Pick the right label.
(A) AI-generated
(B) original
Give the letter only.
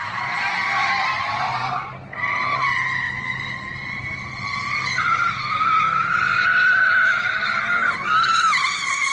B